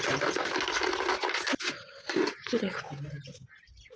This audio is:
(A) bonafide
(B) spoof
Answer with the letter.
A